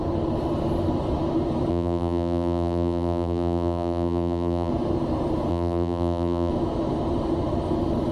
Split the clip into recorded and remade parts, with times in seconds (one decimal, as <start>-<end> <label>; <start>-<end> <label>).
0.0-1.7 recorded; 1.7-4.7 remade; 4.7-5.5 recorded; 5.5-6.5 remade; 6.5-8.1 recorded